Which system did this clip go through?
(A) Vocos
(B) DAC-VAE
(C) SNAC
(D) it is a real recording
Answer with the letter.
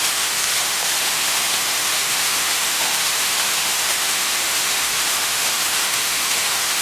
B